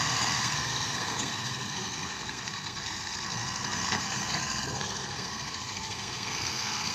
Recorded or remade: remade